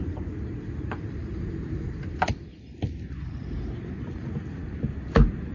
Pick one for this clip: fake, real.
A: real